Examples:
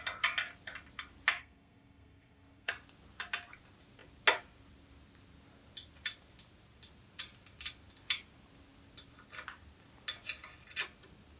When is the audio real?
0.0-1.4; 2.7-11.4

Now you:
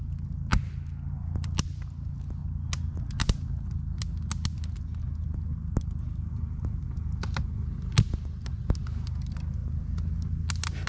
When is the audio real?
0.0-10.9

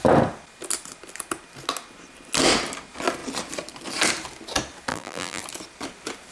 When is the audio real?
0.0-4.9; 5.4-6.3

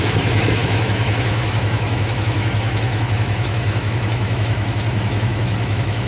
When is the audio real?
none

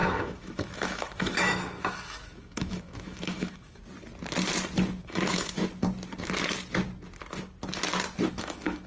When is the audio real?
3.8-5.0; 5.6-8.3

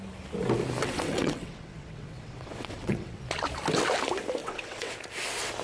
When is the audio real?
0.0-0.8; 3.2-4.4; 4.9-5.6

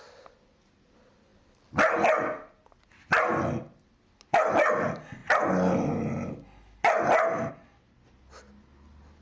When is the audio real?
0.0-9.2